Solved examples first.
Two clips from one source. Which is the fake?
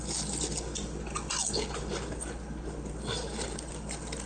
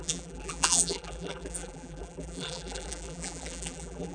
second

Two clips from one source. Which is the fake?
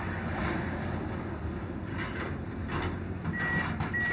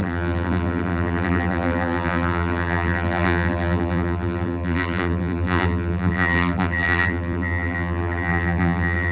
second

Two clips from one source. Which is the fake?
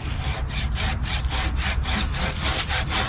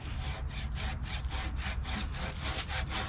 first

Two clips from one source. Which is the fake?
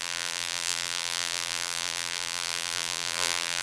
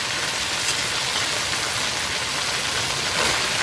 first